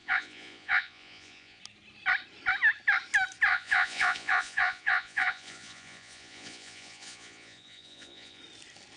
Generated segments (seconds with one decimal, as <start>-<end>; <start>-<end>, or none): 0.0-1.6; 3.5-8.4